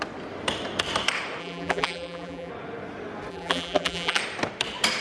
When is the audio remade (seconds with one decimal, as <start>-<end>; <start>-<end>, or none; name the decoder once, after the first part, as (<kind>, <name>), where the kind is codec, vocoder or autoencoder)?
1.4-2.5 (vocoder, BigVGAN v2); 3.3-4.2